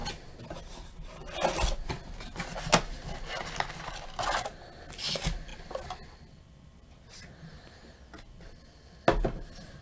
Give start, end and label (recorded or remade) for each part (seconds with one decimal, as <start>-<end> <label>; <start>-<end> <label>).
0.0-9.8 recorded